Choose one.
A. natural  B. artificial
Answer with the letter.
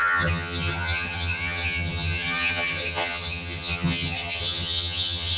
B